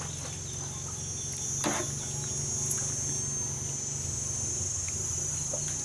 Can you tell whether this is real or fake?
real